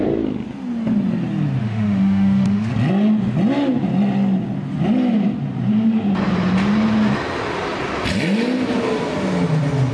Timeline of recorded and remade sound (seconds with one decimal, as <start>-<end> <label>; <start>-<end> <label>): 0.0-1.6 recorded; 1.6-2.7 remade; 2.7-9.9 recorded